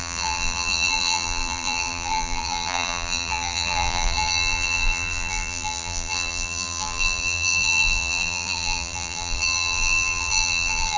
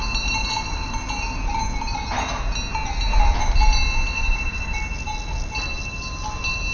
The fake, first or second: first